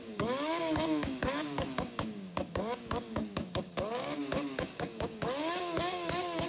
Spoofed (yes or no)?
yes